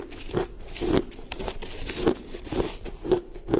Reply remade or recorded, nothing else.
recorded